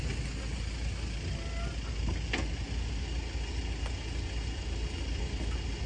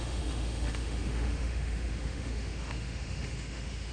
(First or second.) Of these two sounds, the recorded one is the first